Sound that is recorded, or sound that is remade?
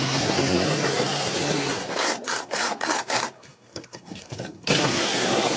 remade